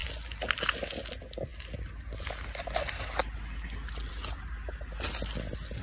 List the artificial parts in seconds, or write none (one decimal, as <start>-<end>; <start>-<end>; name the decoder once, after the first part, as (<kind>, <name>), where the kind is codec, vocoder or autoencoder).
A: none